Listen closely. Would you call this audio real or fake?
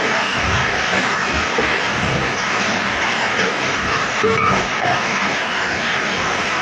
fake